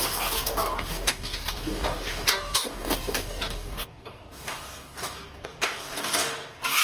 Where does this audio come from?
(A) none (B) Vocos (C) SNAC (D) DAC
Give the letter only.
D